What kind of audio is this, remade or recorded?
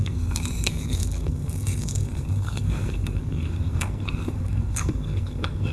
remade